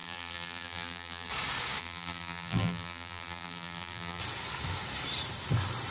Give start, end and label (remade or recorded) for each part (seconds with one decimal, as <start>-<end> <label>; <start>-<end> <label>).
0.0-1.3 remade; 1.3-1.8 recorded; 1.8-4.2 remade; 4.2-5.9 recorded